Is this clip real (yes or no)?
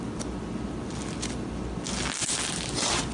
yes